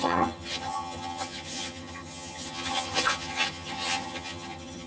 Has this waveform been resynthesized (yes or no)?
yes